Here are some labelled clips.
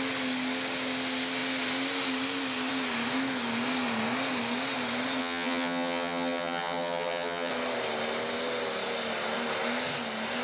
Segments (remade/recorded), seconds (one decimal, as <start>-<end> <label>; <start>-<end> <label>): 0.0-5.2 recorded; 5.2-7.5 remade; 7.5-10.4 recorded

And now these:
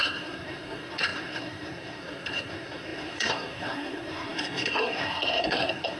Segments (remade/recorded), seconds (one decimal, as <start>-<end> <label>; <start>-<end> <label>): 0.0-6.0 remade

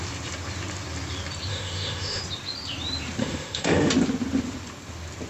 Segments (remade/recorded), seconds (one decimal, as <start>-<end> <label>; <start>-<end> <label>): 0.0-1.5 recorded; 1.5-2.2 remade; 2.2-3.2 recorded; 3.2-3.9 remade; 3.9-5.3 recorded

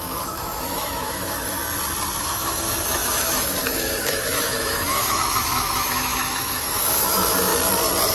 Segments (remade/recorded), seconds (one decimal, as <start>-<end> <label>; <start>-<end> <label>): 0.0-1.6 remade; 1.6-2.2 recorded; 2.2-7.5 remade; 7.5-8.1 recorded

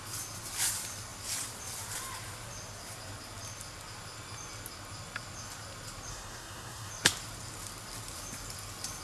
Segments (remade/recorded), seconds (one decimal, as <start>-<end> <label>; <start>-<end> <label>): 0.0-6.1 recorded; 6.1-6.9 remade; 6.9-9.0 recorded

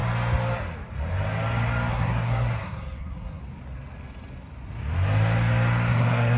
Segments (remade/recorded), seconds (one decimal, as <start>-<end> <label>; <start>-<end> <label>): 0.0-1.9 recorded; 1.9-3.4 remade; 3.4-5.9 recorded; 5.9-6.4 remade

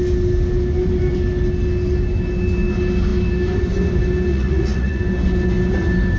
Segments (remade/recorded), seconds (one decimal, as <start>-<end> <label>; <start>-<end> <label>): 0.0-4.3 recorded; 4.3-5.0 remade; 5.0-6.2 recorded